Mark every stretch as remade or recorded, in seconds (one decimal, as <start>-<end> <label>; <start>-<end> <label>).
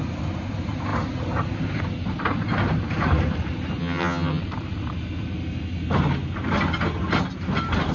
0.0-3.8 recorded; 3.8-4.4 remade; 4.4-7.9 recorded